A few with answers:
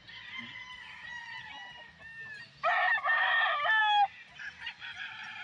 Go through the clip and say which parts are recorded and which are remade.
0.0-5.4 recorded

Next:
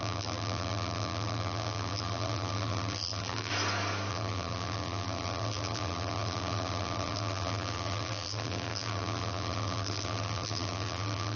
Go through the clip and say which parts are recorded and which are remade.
0.0-3.5 remade; 3.5-4.1 recorded; 4.1-11.4 remade

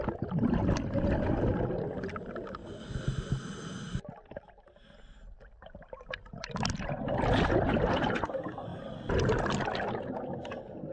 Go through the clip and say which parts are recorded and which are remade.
0.0-10.9 recorded

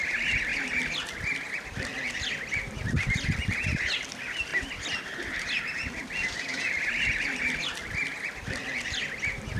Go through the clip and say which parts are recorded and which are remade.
0.0-9.6 recorded